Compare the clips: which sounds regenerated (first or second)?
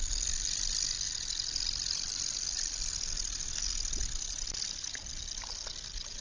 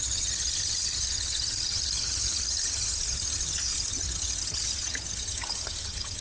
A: second